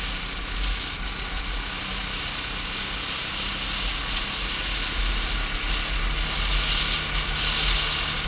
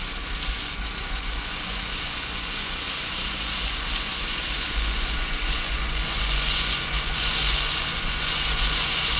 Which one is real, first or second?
first